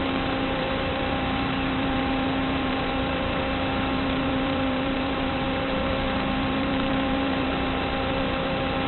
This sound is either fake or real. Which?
fake